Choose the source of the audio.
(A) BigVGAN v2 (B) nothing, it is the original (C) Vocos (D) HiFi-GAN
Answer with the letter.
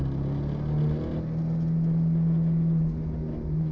B